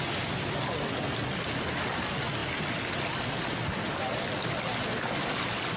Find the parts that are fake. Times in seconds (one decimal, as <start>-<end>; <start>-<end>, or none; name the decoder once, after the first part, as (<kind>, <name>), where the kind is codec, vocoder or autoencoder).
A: none